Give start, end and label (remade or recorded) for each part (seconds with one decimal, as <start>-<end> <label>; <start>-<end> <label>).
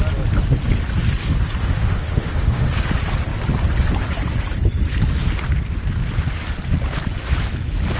0.0-1.6 recorded; 1.6-2.7 remade; 2.7-8.0 recorded